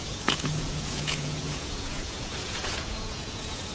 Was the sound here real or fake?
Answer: fake